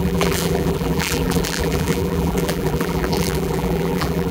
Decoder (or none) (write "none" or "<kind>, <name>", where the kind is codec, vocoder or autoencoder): vocoder, BigVGAN v2